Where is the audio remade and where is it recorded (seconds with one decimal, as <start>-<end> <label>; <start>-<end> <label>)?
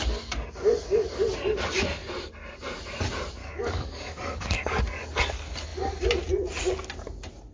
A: 0.0-3.4 recorded; 3.4-4.8 remade; 4.8-7.5 recorded